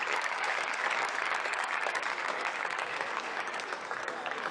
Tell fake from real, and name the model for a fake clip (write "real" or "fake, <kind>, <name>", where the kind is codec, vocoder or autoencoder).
fake, codec, DAC